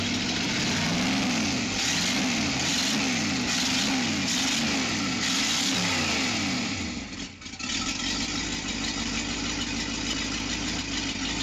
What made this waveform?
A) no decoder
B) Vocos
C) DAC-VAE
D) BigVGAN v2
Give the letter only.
A